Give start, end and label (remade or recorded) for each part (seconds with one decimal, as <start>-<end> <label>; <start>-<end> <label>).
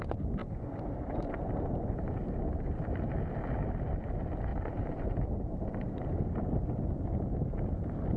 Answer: 0.0-0.4 recorded; 0.4-3.2 remade; 3.2-4.5 recorded; 4.5-6.3 remade; 6.3-8.2 recorded